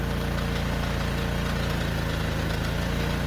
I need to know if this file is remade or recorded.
recorded